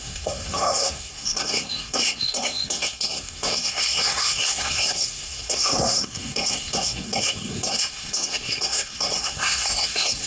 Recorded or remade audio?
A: remade